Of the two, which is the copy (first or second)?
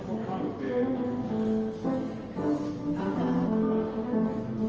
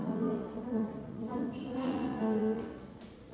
second